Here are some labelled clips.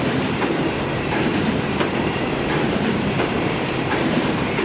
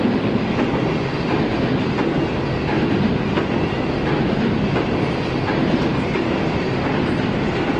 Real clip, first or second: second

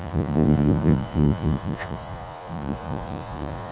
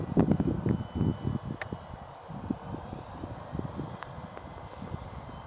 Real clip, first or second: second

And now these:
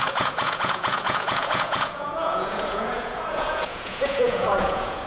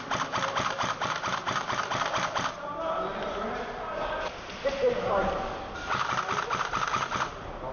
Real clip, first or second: second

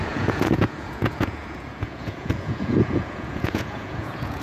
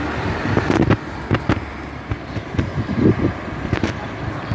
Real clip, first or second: second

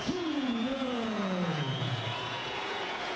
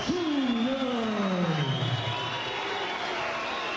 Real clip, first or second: second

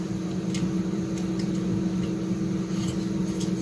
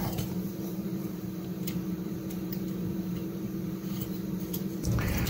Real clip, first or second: first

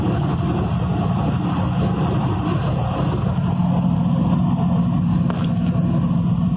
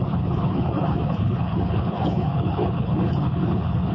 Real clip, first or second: first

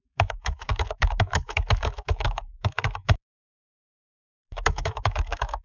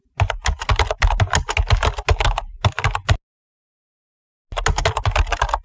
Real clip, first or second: second